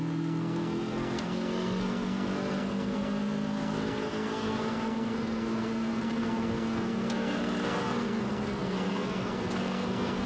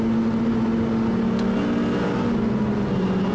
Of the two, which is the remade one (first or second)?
first